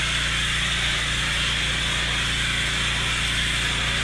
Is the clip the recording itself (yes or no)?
yes